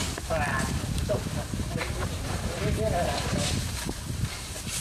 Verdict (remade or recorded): recorded